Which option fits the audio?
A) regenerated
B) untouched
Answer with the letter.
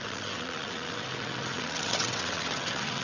A